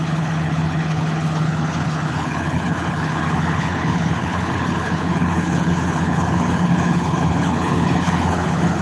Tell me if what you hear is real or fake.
fake